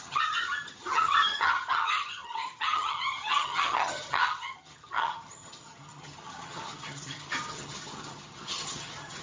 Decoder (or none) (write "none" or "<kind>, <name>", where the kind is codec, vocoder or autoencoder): vocoder, HiFi-GAN